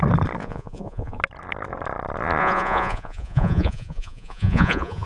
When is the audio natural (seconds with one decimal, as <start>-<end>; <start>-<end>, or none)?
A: 0.0-0.4; 1.2-2.4